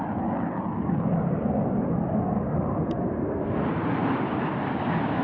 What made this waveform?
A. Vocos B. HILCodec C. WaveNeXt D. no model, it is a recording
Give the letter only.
D